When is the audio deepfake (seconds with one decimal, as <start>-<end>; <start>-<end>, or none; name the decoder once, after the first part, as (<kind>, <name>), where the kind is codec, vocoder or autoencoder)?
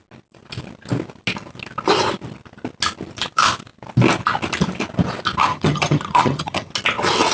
5.5-6.7 (vocoder, HiFi-GAN)